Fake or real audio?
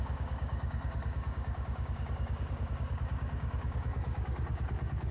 fake